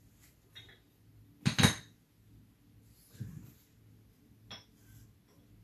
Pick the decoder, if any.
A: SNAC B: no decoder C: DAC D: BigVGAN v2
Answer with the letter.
B